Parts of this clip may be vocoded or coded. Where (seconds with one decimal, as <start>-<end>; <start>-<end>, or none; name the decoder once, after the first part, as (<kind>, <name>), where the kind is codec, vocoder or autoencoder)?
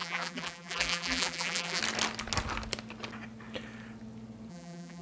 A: 0.0-1.8 (vocoder, BigVGAN v2); 4.5-5.0